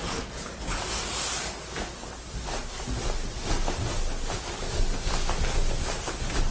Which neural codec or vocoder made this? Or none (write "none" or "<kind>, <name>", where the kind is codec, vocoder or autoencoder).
none